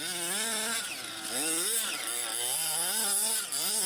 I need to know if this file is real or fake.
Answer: real